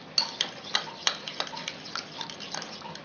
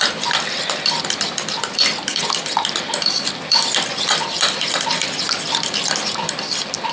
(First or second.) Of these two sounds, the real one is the first